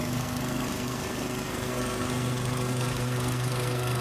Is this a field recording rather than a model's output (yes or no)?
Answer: no